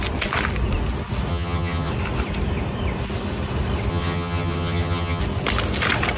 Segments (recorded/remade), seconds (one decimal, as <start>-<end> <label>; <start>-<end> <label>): 0.0-1.3 recorded; 1.3-1.9 remade; 1.9-3.9 recorded; 3.9-5.2 remade; 5.2-6.2 recorded